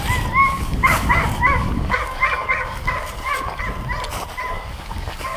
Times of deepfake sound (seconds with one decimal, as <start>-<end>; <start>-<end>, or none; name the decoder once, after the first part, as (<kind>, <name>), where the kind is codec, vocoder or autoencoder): 0.4-3.6 (codec, DAC); 4.5-5.4